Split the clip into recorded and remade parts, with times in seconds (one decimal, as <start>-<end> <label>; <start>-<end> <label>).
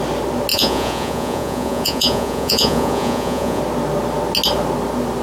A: 0.0-0.5 recorded; 0.5-3.6 remade; 3.6-5.2 recorded